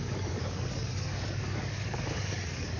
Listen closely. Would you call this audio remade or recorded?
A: remade